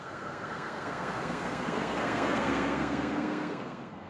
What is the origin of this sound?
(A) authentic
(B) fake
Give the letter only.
B